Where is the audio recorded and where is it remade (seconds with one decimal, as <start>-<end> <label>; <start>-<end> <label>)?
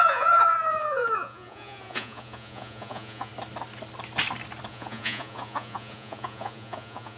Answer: 0.0-3.3 remade; 3.3-4.7 recorded; 4.7-7.2 remade